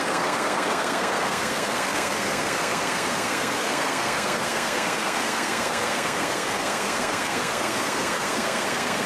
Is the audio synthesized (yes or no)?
yes